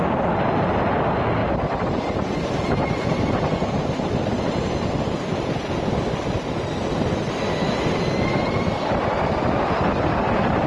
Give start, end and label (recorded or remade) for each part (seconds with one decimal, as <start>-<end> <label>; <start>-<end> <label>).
0.0-10.7 recorded